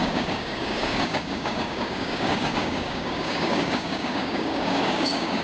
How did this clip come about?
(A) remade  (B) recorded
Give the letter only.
A